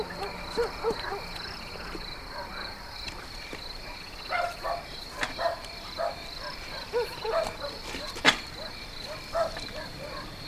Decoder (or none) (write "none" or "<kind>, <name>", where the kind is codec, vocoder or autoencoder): none